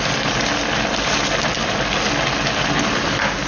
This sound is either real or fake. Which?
real